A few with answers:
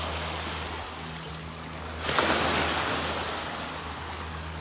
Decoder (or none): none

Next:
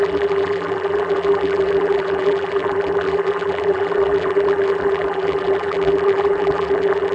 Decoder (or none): vocoder, BigVGAN v2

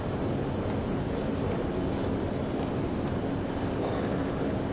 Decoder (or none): none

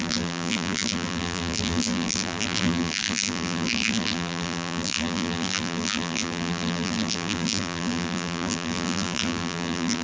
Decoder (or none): vocoder, BigVGAN v2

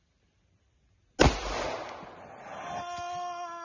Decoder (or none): none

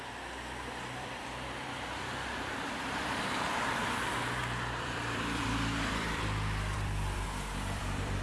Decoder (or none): vocoder, BigVGAN v2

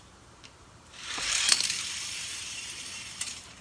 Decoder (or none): vocoder, BigVGAN v2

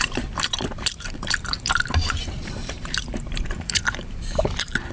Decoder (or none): vocoder, BigVGAN v2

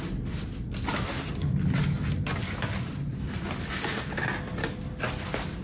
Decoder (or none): none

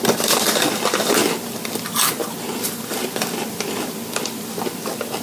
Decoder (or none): vocoder, BigVGAN v2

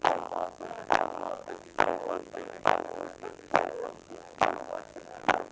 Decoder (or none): vocoder, BigVGAN v2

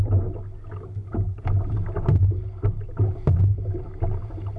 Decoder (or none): none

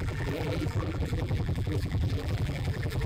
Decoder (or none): vocoder, BigVGAN v2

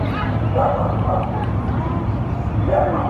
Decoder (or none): vocoder, BigVGAN v2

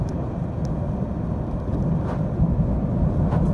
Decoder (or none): none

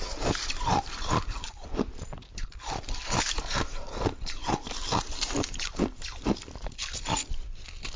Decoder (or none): vocoder, BigVGAN v2